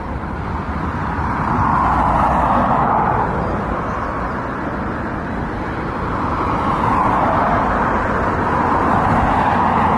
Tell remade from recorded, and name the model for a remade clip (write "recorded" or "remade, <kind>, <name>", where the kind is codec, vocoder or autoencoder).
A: recorded